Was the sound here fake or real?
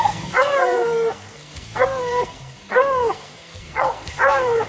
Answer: fake